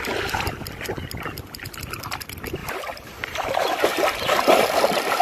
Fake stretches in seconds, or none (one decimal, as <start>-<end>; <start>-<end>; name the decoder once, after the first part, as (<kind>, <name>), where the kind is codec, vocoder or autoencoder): 2.6-3.5 (vocoder, BigVGAN v2); 3.9-5.2